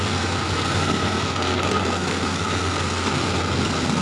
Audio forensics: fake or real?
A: fake